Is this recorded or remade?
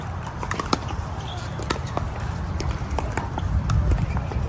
remade